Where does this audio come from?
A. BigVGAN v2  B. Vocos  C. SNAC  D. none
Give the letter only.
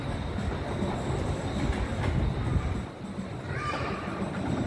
A